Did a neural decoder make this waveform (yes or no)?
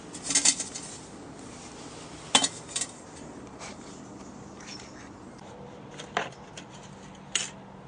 no